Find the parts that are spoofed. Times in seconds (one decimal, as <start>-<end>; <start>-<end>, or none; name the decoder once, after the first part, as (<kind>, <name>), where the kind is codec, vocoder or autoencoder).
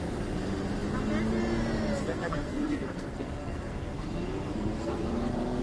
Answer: 2.0-5.6 (codec, SNAC)